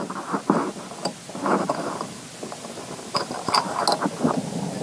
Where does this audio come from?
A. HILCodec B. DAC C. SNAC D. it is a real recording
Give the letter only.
D